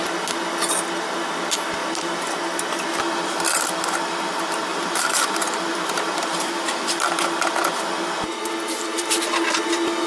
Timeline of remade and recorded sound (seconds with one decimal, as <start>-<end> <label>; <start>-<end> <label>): 0.0-1.8 recorded; 1.8-2.4 remade; 2.4-4.7 recorded; 4.7-7.1 remade; 7.1-10.1 recorded